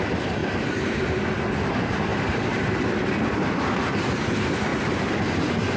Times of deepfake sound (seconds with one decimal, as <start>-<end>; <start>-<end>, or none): 2.1-2.8; 4.7-5.8